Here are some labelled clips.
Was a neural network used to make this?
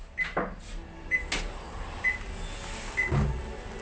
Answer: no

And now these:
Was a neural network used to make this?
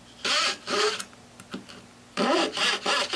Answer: no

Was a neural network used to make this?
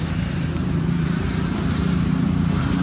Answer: yes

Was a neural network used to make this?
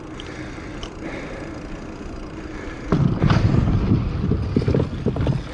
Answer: no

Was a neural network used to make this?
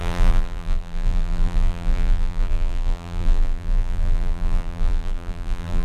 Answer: yes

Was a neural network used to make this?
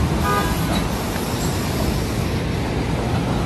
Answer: no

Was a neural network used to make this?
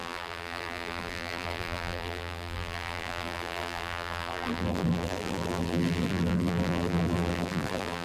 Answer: yes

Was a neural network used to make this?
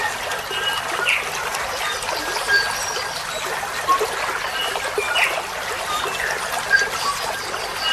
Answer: no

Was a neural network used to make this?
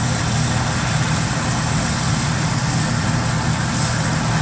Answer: no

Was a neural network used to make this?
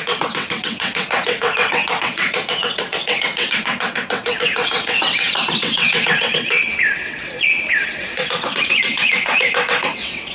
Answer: yes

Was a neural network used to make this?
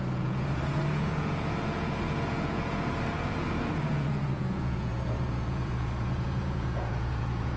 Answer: yes